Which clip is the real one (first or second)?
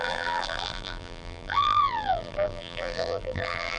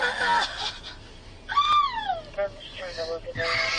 second